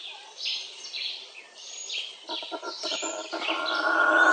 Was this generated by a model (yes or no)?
yes